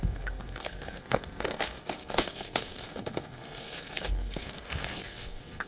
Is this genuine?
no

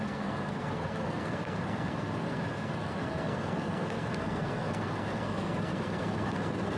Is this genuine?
no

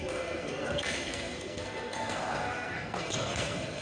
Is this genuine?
no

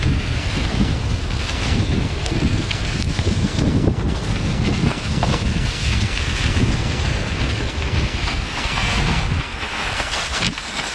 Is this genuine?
no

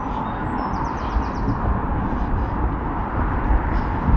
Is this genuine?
yes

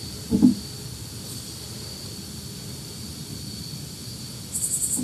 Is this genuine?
yes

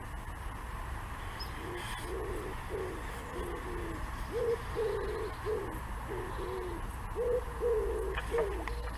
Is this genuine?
yes